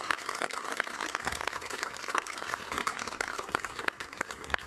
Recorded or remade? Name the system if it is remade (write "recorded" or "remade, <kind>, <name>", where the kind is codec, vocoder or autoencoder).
remade, codec, SNAC